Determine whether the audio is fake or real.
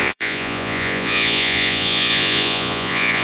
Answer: fake